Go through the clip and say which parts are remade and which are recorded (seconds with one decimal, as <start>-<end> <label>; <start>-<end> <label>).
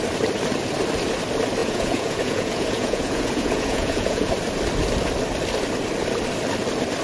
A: 0.0-1.6 recorded; 1.6-4.3 remade; 4.3-7.0 recorded